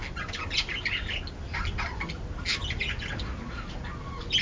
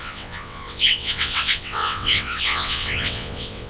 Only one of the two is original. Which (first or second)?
first